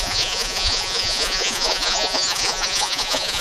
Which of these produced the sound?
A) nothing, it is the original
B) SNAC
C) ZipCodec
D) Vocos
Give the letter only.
D